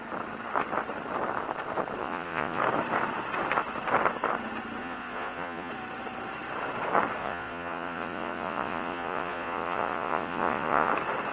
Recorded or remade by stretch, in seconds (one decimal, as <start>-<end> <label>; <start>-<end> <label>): 0.0-2.0 recorded; 2.0-2.6 remade; 2.6-4.8 recorded; 4.8-5.7 remade; 5.7-7.2 recorded; 7.2-10.9 remade; 10.9-11.3 recorded